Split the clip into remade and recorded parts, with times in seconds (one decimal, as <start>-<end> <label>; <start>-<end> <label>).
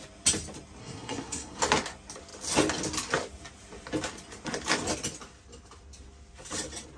0.0-0.8 recorded; 0.8-1.6 remade; 1.6-7.0 recorded